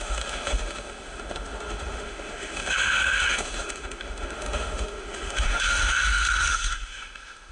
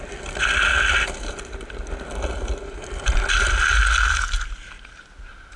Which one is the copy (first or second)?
first